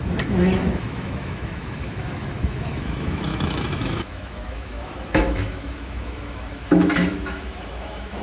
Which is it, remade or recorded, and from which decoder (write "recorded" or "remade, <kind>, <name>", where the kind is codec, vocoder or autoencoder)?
remade, autoencoder, DAC-VAE